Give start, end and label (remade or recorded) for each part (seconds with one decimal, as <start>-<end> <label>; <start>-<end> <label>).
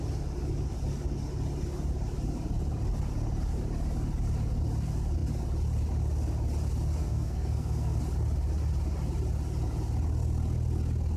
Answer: 0.0-7.0 recorded; 7.0-8.0 remade; 8.0-11.2 recorded